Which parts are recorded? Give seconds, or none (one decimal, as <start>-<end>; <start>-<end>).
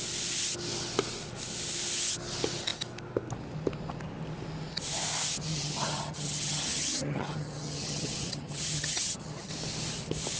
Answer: 0.0-5.5; 9.5-10.4